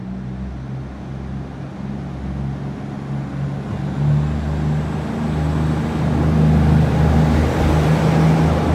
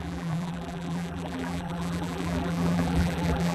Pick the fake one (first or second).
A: second